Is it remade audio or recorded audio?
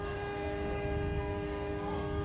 remade